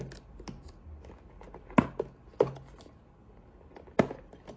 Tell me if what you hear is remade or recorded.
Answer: recorded